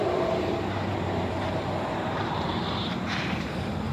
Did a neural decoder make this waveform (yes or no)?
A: yes